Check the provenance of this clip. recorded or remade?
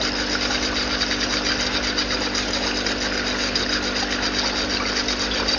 recorded